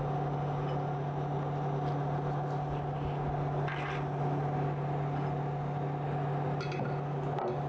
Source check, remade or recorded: recorded